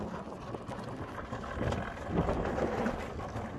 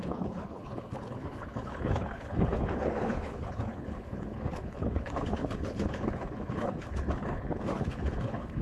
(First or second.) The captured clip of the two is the first